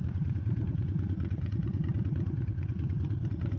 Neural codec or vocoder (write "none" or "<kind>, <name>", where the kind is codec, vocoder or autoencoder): vocoder, Vocos